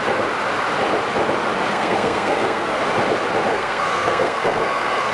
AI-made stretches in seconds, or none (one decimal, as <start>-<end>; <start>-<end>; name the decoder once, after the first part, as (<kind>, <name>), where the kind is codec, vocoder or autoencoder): 1.7-2.8 (codec, SNAC); 3.5-5.1